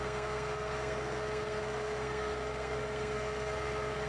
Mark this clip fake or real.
fake